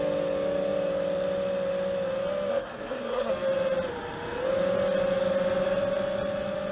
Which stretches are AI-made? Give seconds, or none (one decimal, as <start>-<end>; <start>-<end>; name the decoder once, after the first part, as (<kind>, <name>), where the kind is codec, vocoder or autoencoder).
2.5-3.3 (codec, SNAC)